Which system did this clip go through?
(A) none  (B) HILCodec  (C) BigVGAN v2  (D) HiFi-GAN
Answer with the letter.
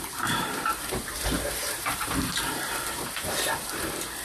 C